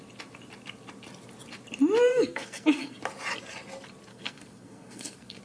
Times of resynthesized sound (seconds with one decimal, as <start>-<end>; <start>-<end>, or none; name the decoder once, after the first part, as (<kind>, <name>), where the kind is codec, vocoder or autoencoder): 2.1-3.0 (codec, SNAC); 4.1-5.4